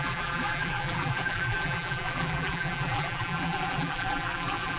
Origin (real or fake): fake